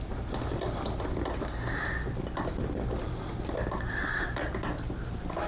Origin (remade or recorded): recorded